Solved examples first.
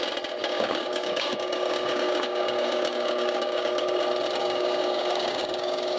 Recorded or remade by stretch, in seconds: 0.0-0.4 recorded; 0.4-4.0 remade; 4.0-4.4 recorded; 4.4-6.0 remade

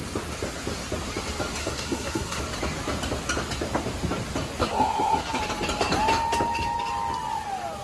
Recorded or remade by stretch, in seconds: 0.0-1.6 recorded; 1.6-2.4 remade; 2.4-4.6 recorded; 4.6-5.4 remade; 5.4-7.8 recorded

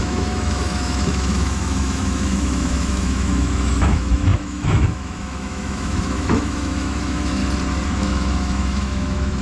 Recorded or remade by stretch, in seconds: 0.0-7.4 remade; 7.4-7.9 recorded; 7.9-9.4 remade

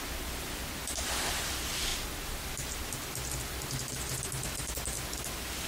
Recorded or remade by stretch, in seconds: 0.0-5.7 recorded

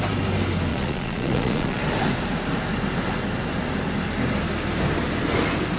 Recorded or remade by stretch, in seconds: 0.0-0.7 recorded; 0.7-1.8 remade; 1.8-5.8 recorded

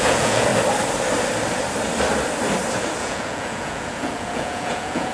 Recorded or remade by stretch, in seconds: 0.0-0.5 remade; 0.5-3.0 recorded; 3.0-5.1 remade

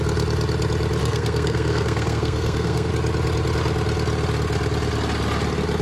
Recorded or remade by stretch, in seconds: 0.0-1.0 recorded; 1.0-2.9 remade; 2.9-5.8 recorded